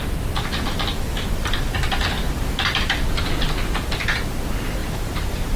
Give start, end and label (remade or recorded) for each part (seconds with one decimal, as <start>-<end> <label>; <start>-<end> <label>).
0.0-4.8 recorded; 4.8-5.6 remade